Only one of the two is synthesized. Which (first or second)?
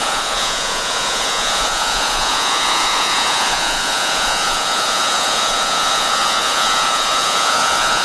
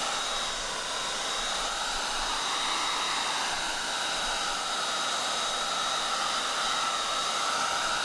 first